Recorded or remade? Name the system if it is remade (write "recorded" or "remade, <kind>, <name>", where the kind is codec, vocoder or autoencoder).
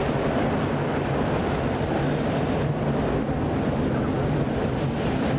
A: recorded